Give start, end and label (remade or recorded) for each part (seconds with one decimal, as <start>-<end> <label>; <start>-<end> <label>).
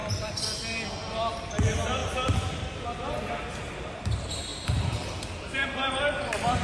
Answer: 0.0-0.6 remade; 0.6-2.0 recorded; 2.0-3.3 remade; 3.3-4.5 recorded; 4.5-5.3 remade; 5.3-6.6 recorded